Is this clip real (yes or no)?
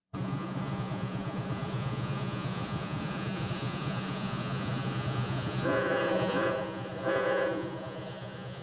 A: no